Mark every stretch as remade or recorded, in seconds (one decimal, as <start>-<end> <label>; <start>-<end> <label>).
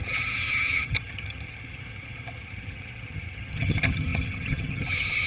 0.0-5.3 remade